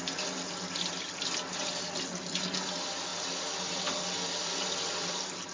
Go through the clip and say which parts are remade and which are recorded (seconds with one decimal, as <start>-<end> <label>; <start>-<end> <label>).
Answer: 0.0-5.5 recorded